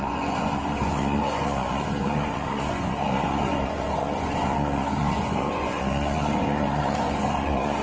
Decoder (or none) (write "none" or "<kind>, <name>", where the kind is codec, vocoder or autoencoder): vocoder, Vocos